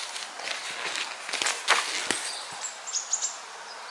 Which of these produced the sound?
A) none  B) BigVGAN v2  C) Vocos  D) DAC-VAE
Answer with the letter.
A